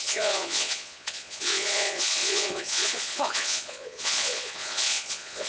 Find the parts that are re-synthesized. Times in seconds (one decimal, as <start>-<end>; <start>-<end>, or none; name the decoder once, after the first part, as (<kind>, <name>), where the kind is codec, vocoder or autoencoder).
0.0-5.5 (vocoder, Vocos)